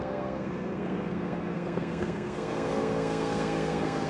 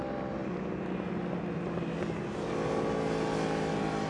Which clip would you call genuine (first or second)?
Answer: second